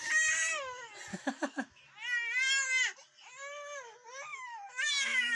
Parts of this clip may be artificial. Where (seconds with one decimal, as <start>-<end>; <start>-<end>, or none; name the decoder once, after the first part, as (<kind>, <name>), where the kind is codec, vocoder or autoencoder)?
1.1-1.8 (autoencoder, DAC-VAE); 4.3-5.3